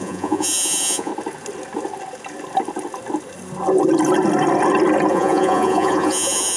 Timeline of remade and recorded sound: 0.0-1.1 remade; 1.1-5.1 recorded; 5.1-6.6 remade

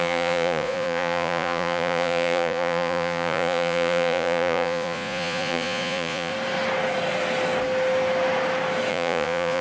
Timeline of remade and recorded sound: 0.0-6.3 remade; 6.3-8.9 recorded; 8.9-9.6 remade

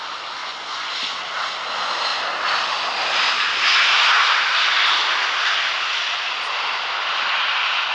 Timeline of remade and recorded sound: 0.0-0.4 recorded; 0.4-0.9 remade; 0.9-7.9 recorded